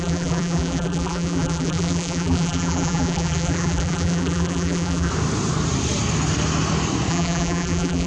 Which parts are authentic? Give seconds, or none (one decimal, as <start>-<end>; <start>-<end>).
5.1-7.1